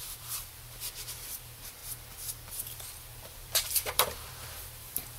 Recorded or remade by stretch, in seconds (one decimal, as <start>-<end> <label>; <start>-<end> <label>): 0.0-1.8 remade; 1.8-2.5 recorded; 2.5-5.2 remade